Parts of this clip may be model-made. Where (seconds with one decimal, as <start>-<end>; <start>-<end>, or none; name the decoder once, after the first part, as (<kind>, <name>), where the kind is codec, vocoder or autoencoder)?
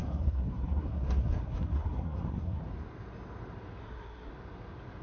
0.0-2.6 (codec, SNAC); 3.8-4.3